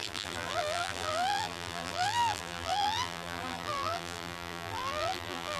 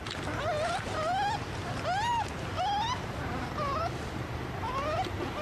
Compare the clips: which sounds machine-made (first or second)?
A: first